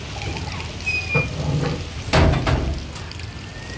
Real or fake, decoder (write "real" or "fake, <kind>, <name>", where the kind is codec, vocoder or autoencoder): real